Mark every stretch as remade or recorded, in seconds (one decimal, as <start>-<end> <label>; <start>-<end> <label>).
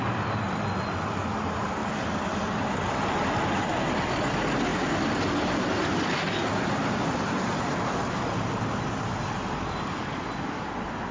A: 0.0-11.1 recorded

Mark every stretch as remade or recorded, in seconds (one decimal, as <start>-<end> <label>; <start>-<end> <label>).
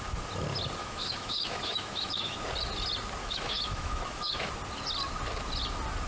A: 0.0-0.8 recorded; 0.8-2.4 remade; 2.4-3.2 recorded; 3.2-4.5 remade; 4.5-6.1 recorded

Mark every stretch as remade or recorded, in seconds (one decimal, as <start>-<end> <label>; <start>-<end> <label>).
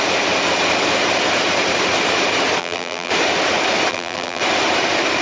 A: 0.0-2.6 recorded; 2.6-3.1 remade; 3.1-3.9 recorded; 3.9-4.4 remade; 4.4-5.2 recorded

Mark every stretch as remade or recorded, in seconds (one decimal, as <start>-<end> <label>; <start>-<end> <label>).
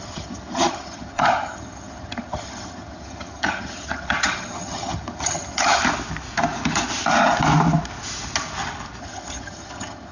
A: 0.0-5.8 remade; 5.8-9.0 recorded; 9.0-10.1 remade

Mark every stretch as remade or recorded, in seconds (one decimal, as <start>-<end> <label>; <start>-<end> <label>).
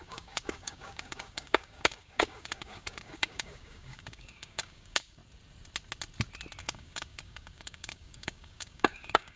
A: 0.0-5.2 remade; 5.2-6.6 recorded; 6.6-9.4 remade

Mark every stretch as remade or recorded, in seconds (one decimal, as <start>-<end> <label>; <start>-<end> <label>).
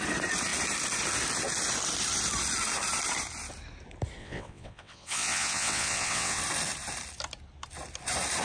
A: 0.0-4.2 recorded; 4.2-6.4 remade; 6.4-8.4 recorded